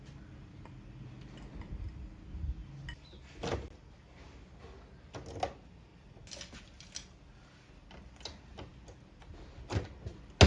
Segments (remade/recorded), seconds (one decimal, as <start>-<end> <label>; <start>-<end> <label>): 0.0-10.5 recorded